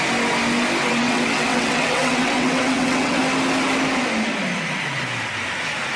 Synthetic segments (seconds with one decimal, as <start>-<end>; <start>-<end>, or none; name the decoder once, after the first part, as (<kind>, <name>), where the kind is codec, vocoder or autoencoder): 0.8-3.2 (vocoder, WaveNeXt)